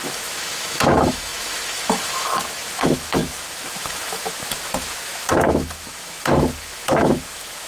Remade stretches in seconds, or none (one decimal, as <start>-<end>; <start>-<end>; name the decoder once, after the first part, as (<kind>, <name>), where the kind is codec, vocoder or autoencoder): 0.0-7.7 (autoencoder, DAC-VAE)